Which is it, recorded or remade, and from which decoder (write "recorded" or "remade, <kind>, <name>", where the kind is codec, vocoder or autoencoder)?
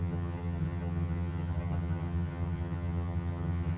remade, vocoder, HiFi-GAN